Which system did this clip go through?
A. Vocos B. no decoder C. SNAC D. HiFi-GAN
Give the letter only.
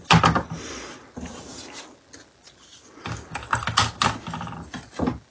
B